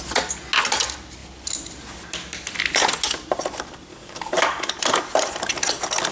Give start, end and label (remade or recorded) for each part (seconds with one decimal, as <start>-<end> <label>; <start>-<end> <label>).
0.0-3.9 recorded; 3.9-4.7 remade; 4.7-6.1 recorded